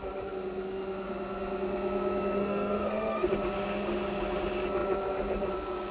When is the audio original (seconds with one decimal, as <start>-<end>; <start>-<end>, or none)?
0.0-2.4; 3.3-5.9